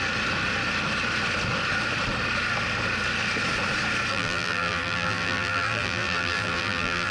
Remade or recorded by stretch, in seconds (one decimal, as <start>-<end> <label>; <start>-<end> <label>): 0.0-4.1 recorded; 4.1-7.1 remade